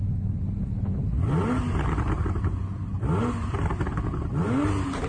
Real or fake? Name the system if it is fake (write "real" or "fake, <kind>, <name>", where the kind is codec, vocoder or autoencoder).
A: real